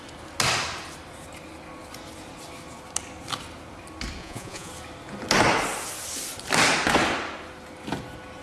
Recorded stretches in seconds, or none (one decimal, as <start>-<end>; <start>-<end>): 0.0-4.2; 4.7-8.4